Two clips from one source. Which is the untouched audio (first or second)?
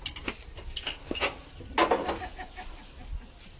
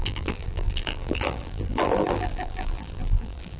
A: first